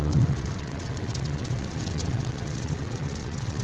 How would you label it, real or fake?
fake